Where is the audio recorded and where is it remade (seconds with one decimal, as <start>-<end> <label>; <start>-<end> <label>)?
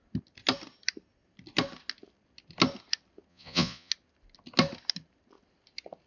0.0-3.3 recorded; 3.3-3.9 remade; 3.9-6.1 recorded